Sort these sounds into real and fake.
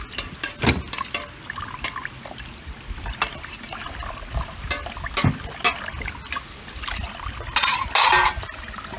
real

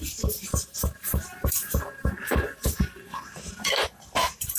fake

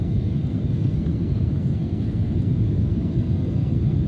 fake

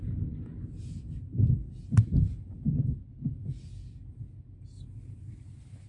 real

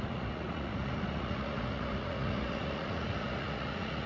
fake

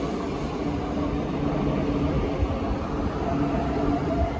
real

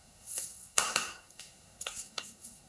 fake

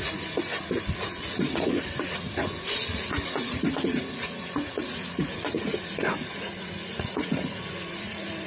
fake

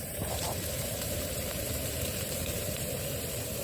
fake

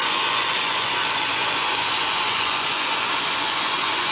fake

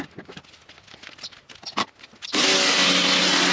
real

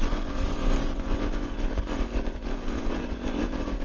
fake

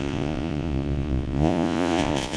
fake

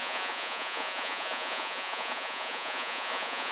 fake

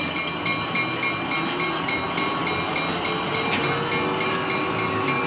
real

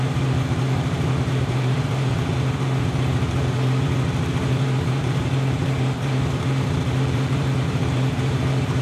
fake